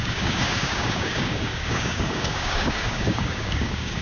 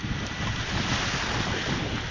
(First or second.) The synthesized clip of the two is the first